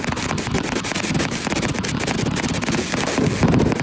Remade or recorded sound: recorded